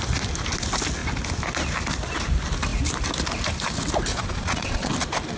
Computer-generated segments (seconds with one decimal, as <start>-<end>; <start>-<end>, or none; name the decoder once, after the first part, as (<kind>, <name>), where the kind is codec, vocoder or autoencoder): 4.1-4.9 (vocoder, Vocos)